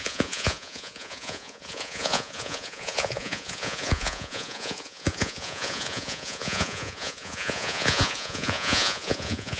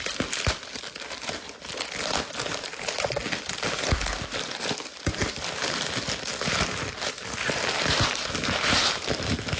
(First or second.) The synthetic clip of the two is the first